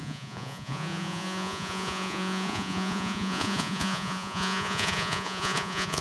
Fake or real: fake